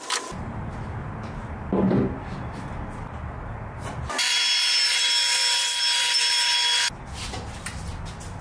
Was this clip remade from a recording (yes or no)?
no